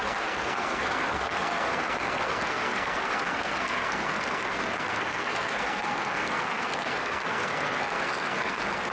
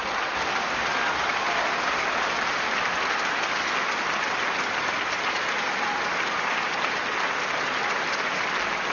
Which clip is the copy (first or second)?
first